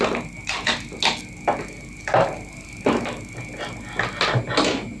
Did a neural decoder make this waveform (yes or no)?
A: no